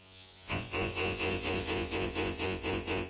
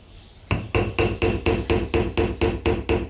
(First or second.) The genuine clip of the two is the second